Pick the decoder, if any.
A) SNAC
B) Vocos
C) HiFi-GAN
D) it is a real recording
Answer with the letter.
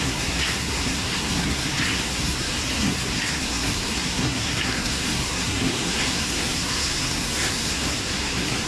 A